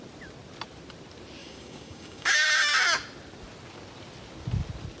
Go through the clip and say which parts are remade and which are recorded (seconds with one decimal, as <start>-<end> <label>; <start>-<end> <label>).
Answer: 0.0-1.4 recorded; 1.4-2.5 remade; 2.5-5.0 recorded